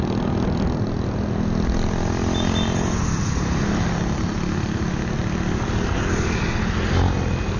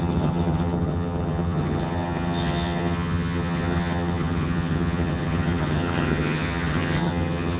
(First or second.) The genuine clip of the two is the first